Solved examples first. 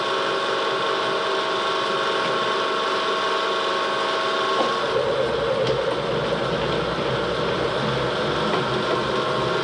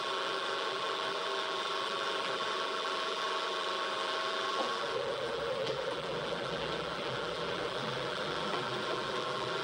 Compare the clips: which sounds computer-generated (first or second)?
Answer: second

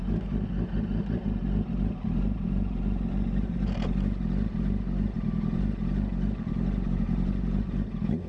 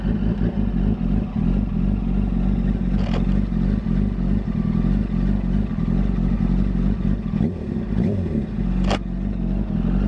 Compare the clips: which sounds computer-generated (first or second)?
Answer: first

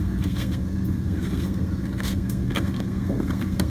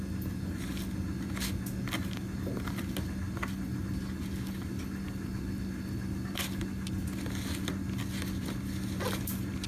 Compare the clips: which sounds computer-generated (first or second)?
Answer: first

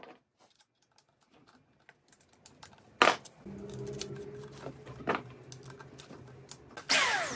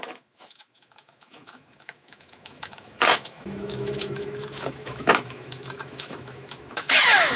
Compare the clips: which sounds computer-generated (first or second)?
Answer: second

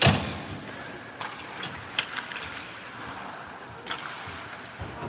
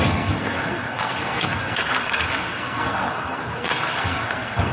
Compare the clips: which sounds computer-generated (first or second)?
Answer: second